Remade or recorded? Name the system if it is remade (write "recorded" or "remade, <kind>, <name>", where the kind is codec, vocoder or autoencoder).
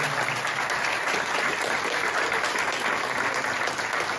recorded